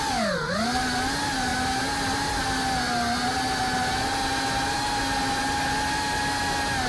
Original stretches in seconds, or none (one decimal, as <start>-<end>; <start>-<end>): 0.0-6.9